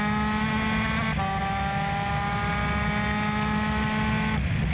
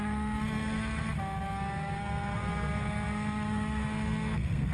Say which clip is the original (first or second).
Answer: first